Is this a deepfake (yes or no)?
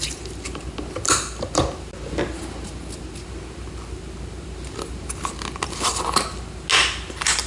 no